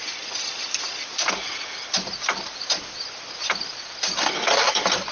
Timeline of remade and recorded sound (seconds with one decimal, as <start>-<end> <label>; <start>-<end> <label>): 0.0-5.1 recorded

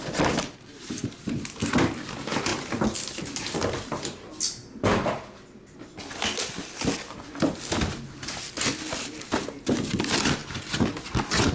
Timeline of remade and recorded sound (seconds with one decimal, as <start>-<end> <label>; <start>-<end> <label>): 0.0-11.5 recorded

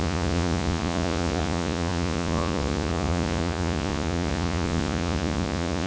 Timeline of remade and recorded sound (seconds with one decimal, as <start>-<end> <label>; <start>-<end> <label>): 0.0-5.9 remade

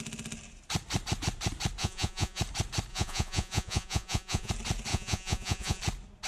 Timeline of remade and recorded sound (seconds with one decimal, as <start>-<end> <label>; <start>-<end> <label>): 0.0-1.8 recorded; 1.8-2.4 remade; 2.4-2.9 recorded; 2.9-4.5 remade; 4.5-4.9 recorded; 4.9-5.8 remade; 5.8-6.3 recorded